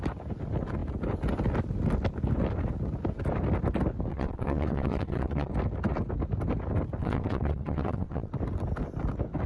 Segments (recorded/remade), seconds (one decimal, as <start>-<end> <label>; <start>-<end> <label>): 0.0-4.1 recorded; 4.1-5.5 remade; 5.5-7.0 recorded; 7.0-8.3 remade; 8.3-9.5 recorded